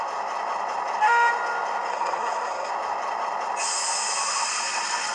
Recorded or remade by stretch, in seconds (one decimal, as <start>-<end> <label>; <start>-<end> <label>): 0.0-1.9 recorded; 1.9-2.7 remade; 2.7-5.1 recorded